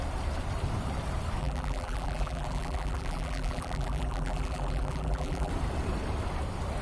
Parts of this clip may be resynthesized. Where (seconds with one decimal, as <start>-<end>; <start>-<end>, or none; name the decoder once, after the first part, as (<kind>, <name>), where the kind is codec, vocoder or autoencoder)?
1.4-5.5 (vocoder, BigVGAN v2)